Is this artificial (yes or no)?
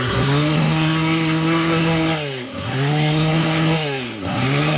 yes